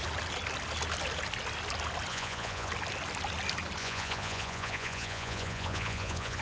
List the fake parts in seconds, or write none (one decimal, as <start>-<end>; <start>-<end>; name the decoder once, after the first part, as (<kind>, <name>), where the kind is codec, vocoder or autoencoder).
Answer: 2.1-2.7 (vocoder, Vocos); 3.8-6.4